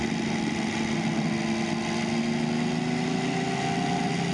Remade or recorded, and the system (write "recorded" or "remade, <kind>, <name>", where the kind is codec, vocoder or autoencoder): recorded